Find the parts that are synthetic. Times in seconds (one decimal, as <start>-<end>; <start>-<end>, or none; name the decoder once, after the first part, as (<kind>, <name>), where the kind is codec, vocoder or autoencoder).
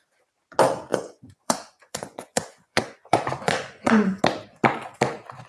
0.9-4.2 (vocoder, Vocos)